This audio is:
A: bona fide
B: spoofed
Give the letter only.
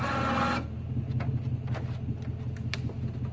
A